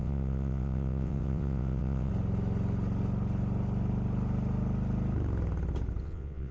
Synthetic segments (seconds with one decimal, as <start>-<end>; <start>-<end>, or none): 0.0-2.1; 6.0-6.5